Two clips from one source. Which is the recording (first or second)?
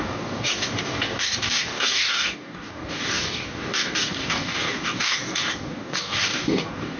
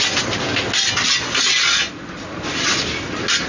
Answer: second